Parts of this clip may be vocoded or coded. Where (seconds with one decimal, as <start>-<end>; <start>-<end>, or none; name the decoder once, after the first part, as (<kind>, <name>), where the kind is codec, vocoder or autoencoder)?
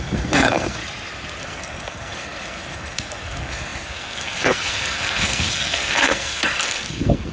0.0-0.8 (codec, SNAC); 1.4-7.3